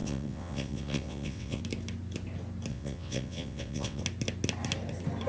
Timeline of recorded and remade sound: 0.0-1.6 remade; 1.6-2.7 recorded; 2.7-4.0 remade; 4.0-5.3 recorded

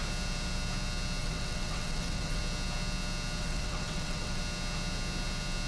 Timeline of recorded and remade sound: 0.0-1.2 recorded; 1.2-2.4 remade; 2.4-3.4 recorded; 3.4-4.4 remade; 4.4-5.7 recorded

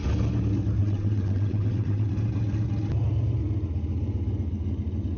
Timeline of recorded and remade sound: 0.0-0.8 recorded; 0.8-2.1 remade; 2.1-5.2 recorded